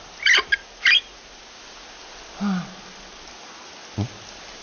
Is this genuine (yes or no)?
yes